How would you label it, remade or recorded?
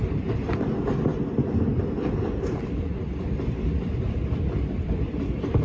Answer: remade